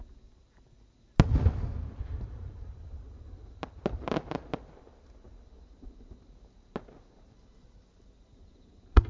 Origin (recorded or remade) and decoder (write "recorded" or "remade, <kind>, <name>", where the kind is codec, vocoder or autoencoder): recorded